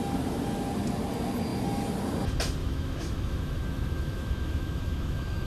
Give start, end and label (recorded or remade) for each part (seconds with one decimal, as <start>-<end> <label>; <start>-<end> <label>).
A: 0.0-2.6 recorded; 2.6-5.5 remade